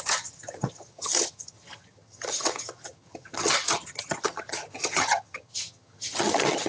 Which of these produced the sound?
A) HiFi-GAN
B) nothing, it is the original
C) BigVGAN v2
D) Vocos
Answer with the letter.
A